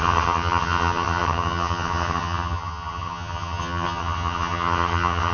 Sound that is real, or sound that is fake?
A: fake